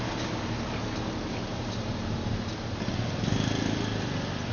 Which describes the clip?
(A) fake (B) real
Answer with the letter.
B